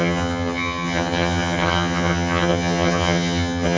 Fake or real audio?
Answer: fake